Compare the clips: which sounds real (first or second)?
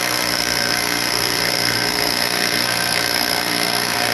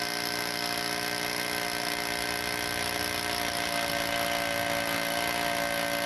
second